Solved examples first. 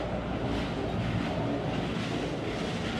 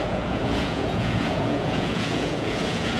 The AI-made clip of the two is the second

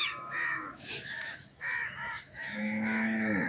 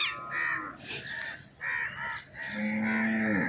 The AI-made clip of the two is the first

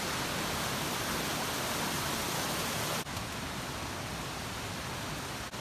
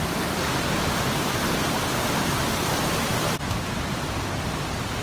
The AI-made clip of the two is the second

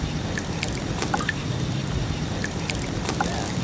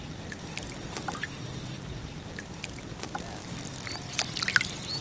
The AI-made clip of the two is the first